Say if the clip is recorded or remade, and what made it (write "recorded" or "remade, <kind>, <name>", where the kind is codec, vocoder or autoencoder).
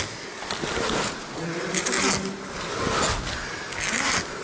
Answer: recorded